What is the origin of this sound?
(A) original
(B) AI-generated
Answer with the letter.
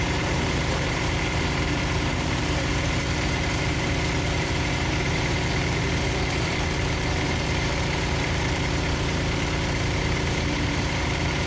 B